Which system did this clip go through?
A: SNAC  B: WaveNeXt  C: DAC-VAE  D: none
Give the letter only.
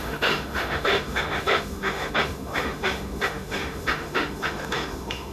C